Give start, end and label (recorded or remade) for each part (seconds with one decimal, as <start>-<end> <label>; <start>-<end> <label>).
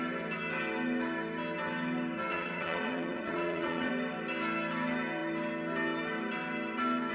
0.0-2.3 recorded; 2.3-3.9 remade; 3.9-7.1 recorded